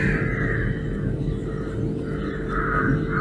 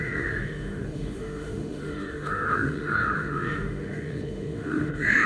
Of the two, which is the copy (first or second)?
second